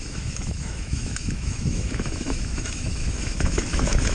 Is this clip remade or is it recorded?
remade